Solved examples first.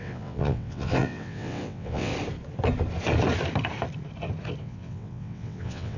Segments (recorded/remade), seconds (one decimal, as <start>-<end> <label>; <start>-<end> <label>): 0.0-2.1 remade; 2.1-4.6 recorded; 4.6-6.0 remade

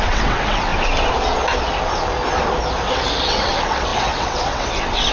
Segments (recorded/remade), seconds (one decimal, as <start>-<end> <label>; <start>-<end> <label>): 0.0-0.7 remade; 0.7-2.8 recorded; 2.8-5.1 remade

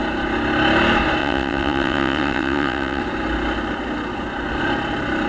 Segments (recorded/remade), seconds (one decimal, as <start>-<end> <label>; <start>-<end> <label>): 0.0-1.2 recorded; 1.2-3.0 remade; 3.0-5.3 recorded